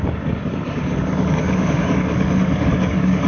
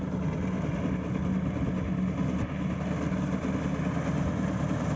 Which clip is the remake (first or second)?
first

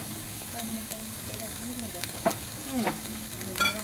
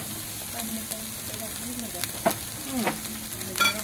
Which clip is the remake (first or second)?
first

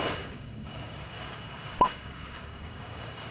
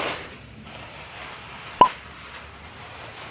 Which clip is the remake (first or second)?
first